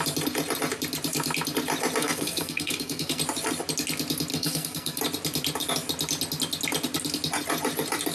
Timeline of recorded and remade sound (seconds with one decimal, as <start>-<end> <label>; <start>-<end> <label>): 0.0-2.0 recorded; 2.0-3.2 remade; 3.2-4.3 recorded; 4.3-5.0 remade; 5.0-8.1 recorded